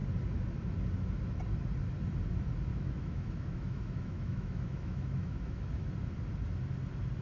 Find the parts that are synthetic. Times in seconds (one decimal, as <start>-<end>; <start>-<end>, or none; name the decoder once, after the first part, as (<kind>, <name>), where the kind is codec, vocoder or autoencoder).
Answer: 2.7-5.9 (autoencoder, DAC-VAE)